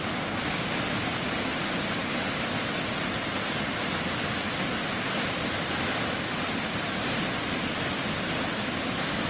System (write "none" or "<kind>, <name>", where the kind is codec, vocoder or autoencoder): none